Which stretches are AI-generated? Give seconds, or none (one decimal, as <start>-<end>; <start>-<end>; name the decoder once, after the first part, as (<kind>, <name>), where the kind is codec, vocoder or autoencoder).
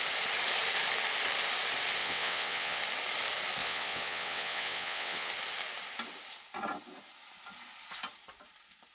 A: 2.0-2.8 (vocoder, WaveNeXt); 3.6-5.3